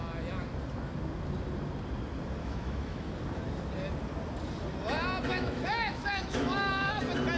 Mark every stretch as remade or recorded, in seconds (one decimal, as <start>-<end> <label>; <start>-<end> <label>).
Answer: 0.0-2.4 recorded; 2.4-3.1 remade; 3.1-5.3 recorded; 5.3-7.0 remade; 7.0-7.4 recorded

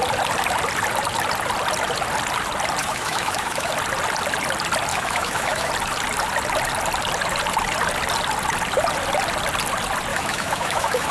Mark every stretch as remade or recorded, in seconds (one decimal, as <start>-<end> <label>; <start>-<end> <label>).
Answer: 0.0-2.8 recorded; 2.8-3.7 remade; 3.7-4.9 recorded; 4.9-5.7 remade; 5.7-10.1 recorded; 10.1-11.1 remade